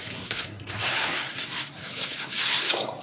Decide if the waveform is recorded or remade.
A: remade